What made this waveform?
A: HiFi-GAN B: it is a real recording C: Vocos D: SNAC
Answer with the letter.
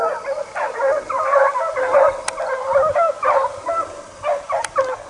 B